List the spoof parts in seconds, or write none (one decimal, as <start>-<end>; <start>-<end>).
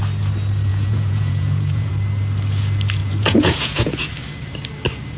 0.7-1.9; 3.0-4.1